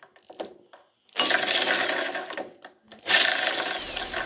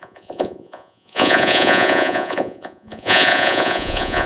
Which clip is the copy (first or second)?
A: second